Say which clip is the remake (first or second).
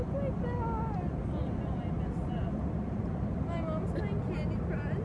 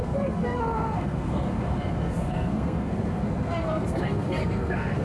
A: second